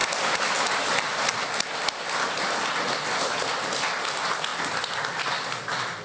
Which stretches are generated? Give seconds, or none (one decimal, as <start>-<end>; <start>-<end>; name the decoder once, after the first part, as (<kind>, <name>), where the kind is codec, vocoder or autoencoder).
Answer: none